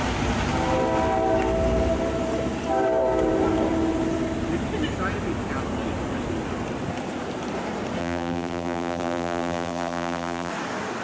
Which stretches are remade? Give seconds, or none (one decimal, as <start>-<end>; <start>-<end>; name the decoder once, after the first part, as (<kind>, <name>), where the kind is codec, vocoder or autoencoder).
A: 8.0-10.5 (vocoder, BigVGAN v2)